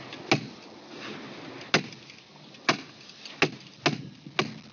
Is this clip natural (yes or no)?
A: yes